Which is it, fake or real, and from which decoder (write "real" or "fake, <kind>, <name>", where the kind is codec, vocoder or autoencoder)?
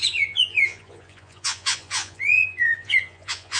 fake, vocoder, Vocos